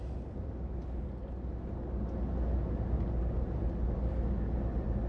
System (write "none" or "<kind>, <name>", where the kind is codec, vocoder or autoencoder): none